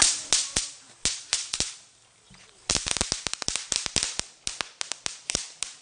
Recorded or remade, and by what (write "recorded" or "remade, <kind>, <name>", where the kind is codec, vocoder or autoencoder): recorded